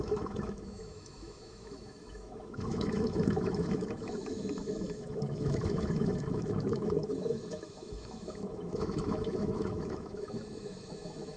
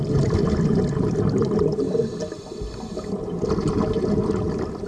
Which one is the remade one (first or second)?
first